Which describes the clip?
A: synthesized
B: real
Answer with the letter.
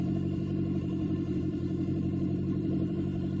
A